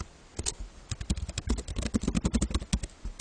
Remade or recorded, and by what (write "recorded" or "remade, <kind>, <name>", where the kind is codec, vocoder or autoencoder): recorded